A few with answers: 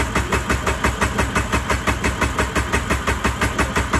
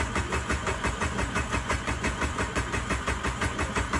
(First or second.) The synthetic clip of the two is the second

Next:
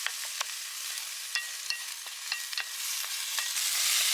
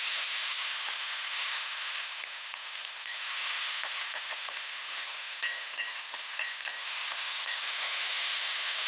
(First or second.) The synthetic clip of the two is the second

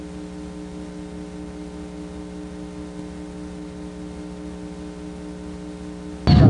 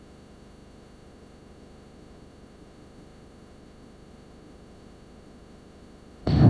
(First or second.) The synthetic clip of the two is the second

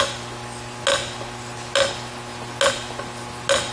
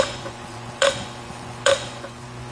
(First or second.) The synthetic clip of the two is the second